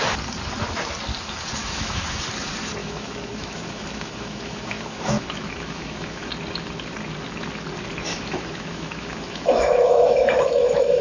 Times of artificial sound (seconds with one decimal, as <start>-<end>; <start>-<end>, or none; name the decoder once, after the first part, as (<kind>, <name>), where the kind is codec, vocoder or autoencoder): 1.6-2.2 (autoencoder, DAC-VAE); 2.8-6.3; 8.1-11.0